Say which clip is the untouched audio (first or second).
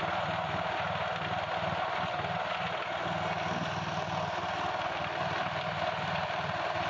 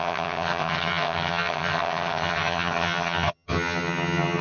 first